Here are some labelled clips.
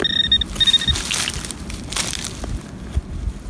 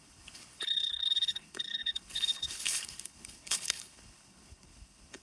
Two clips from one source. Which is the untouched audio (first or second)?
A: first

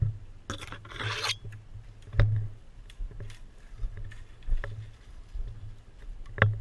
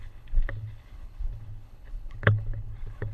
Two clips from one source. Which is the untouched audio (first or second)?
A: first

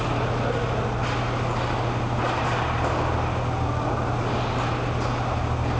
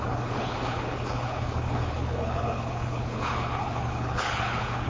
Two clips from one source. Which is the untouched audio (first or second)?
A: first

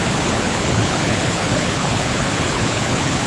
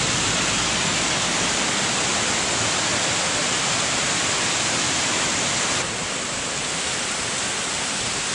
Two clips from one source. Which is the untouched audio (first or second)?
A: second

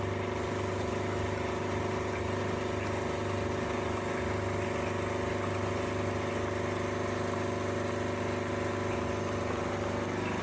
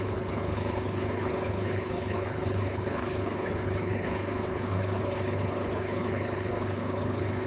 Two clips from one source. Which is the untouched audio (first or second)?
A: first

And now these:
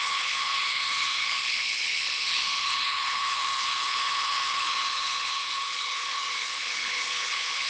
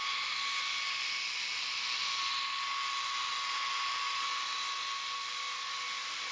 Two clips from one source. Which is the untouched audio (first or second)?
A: second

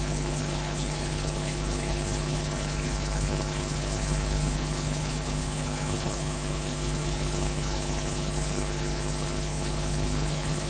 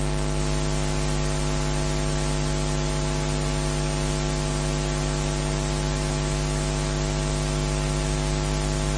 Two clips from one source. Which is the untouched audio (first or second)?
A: second